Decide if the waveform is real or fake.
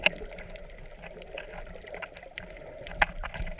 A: real